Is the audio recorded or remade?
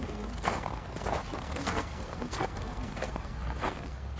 remade